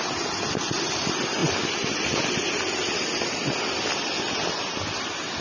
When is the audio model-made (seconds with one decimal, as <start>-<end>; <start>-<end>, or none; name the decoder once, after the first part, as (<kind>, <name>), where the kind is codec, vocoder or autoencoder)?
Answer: none

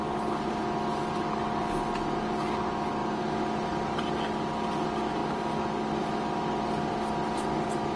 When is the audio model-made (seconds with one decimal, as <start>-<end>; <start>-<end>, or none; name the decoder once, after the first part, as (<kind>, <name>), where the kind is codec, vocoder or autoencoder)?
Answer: none

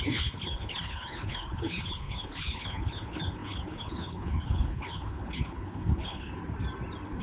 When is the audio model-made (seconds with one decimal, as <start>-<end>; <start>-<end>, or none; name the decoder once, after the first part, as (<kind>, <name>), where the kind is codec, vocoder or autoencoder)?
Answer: 0.0-6.3 (codec, HILCodec)

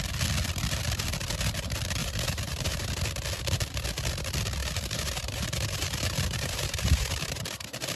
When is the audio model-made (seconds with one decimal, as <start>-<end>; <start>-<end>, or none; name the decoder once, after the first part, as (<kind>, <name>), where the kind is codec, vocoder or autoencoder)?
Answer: 2.0-2.9 (vocoder, BigVGAN v2); 4.6-8.0

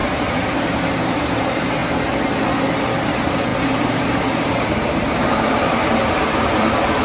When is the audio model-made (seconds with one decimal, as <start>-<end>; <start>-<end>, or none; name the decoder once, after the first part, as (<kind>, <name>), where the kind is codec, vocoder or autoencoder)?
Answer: 0.0-1.8 (vocoder, BigVGAN v2); 3.1-7.0

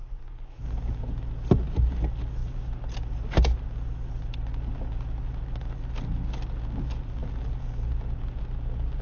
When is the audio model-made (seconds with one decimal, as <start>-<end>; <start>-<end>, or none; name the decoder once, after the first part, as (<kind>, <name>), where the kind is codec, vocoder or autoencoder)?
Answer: none

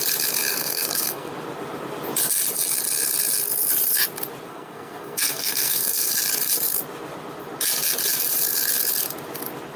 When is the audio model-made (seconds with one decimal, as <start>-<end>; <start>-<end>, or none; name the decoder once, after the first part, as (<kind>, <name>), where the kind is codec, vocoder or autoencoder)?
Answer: 0.5-1.3 (codec, SNAC); 4.5-6.1